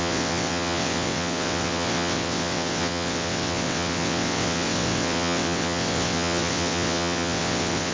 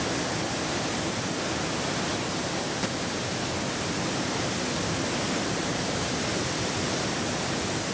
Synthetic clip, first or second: first